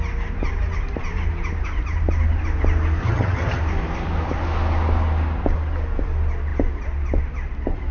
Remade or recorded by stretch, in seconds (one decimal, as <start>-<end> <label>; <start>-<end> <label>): 0.0-3.0 recorded; 3.0-3.6 remade; 3.6-7.9 recorded